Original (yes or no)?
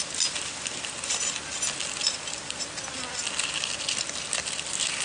yes